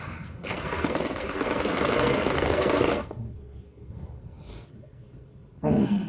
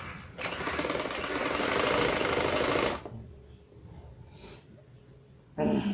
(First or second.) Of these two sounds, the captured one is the second